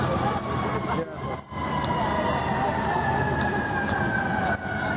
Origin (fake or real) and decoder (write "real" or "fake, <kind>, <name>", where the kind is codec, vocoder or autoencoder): real